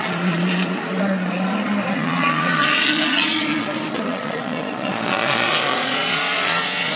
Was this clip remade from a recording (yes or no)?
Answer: yes